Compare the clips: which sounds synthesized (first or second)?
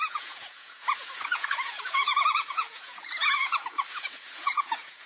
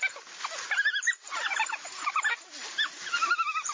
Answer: first